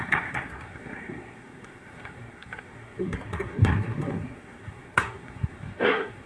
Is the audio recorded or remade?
remade